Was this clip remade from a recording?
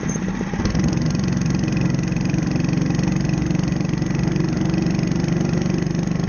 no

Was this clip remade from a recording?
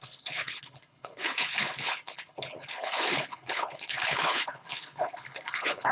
yes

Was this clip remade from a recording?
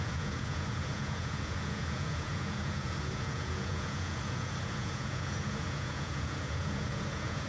yes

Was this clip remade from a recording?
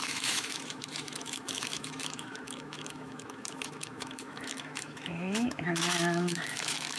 yes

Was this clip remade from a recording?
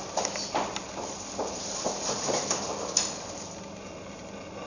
no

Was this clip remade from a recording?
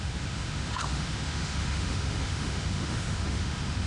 yes